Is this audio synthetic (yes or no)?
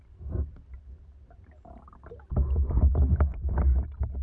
no